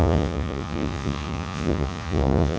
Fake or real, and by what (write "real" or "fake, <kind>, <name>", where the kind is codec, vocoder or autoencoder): fake, vocoder, Vocos